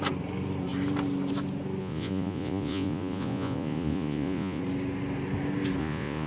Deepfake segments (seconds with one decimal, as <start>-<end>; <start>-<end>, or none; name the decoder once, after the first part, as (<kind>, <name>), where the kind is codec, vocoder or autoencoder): 1.8-4.6 (vocoder, Vocos); 5.8-6.3